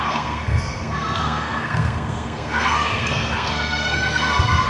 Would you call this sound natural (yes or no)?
no